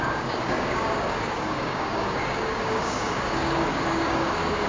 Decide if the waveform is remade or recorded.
remade